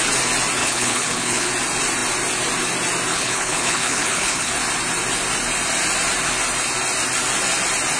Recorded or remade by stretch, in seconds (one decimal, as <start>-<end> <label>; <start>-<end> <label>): 0.0-0.6 recorded; 0.6-1.5 remade; 1.5-3.1 recorded; 3.1-4.5 remade; 4.5-8.0 recorded